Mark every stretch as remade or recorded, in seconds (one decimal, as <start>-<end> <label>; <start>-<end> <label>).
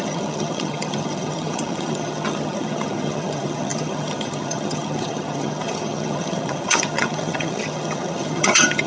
0.0-8.9 remade